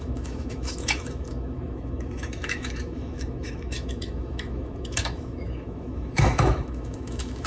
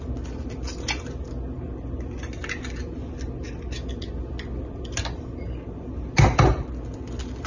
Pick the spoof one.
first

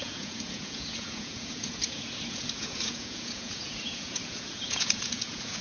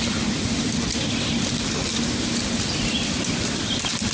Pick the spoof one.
first